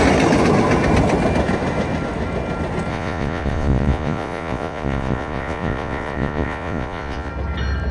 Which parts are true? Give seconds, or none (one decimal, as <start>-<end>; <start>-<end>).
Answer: 0.0-2.9; 7.3-7.9